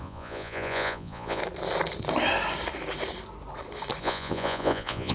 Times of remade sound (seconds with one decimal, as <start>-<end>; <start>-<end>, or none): 0.0-1.4; 4.0-5.1